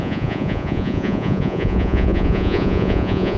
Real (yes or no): no